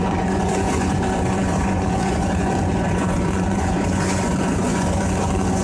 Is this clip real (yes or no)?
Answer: no